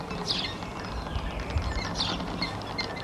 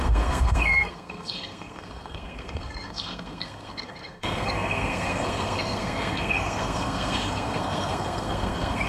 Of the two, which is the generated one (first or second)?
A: second